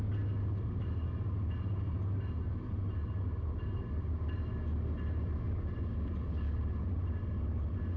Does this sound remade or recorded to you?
recorded